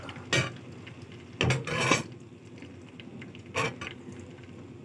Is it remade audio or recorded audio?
recorded